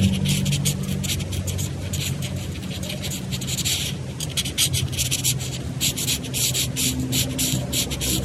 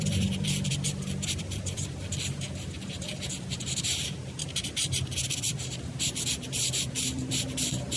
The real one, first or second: first